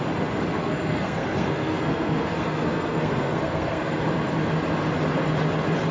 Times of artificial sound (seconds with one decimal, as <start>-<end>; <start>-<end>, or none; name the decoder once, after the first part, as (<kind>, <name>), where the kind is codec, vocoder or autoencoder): 0.5-4.0 (codec, SNAC)